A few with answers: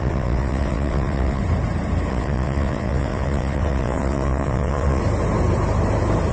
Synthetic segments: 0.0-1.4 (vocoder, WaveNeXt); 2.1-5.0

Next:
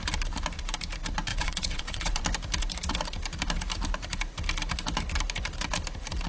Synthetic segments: 1.3-2.2 (vocoder, WaveNeXt)

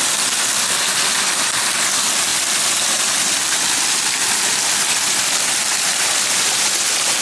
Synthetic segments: none

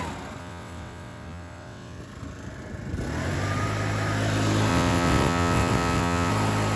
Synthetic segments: 0.4-2.0 (vocoder, WaveNeXt); 4.7-6.3

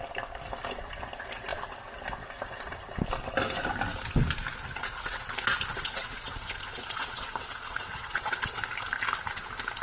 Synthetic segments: 4.8-5.3 (vocoder, WaveNeXt); 5.7-8.6

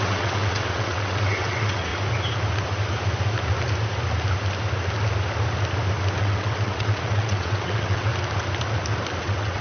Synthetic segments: 0.0-1.9 (vocoder, WaveNeXt); 6.2-8.1; 9.2-9.6

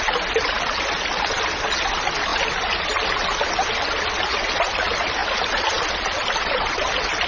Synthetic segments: none